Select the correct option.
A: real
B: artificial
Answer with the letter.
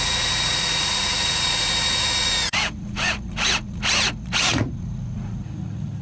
B